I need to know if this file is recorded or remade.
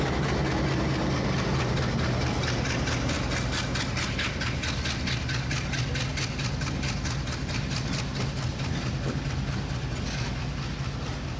recorded